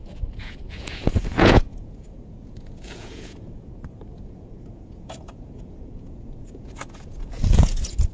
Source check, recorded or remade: remade